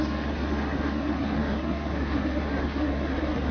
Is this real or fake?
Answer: fake